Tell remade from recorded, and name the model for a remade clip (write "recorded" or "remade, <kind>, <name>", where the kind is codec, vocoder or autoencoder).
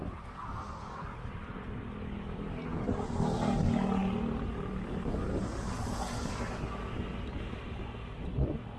recorded